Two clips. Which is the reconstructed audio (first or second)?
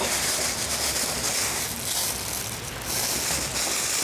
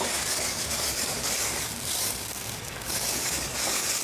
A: second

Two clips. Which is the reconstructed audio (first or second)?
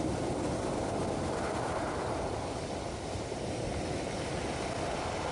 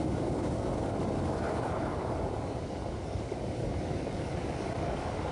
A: second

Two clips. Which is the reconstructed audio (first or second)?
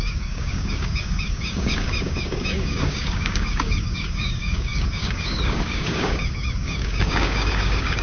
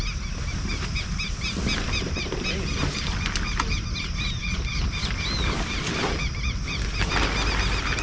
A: first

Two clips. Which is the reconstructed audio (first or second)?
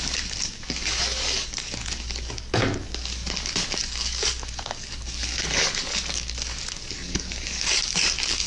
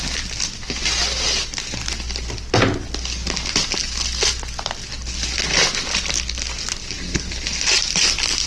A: first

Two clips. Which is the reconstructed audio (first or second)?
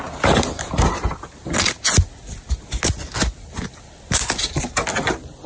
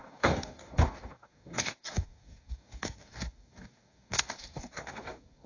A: second